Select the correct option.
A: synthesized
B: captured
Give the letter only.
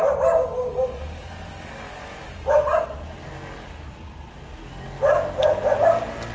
B